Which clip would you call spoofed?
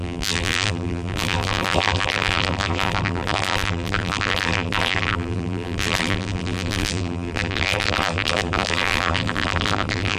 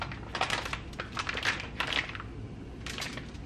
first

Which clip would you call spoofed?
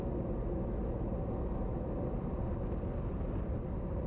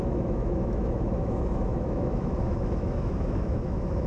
second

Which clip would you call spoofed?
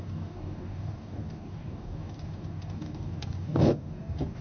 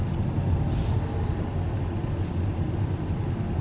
first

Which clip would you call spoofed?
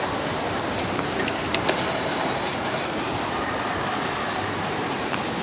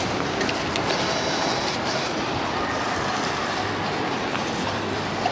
first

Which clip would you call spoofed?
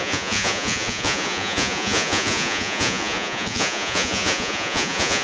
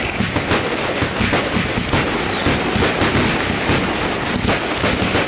first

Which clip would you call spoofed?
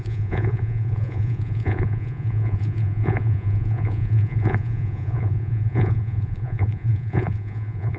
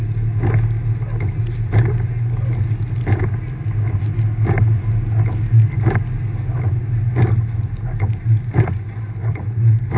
first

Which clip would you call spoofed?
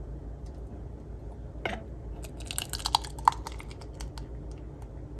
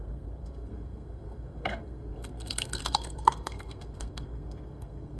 second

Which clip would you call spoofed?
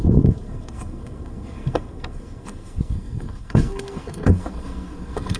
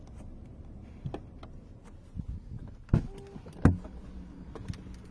first